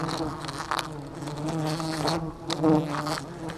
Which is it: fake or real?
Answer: real